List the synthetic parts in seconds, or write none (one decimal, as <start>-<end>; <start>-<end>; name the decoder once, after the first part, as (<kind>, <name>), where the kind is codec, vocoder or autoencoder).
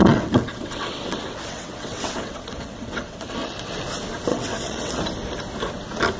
0.0-3.7 (vocoder, WaveNeXt); 4.3-5.0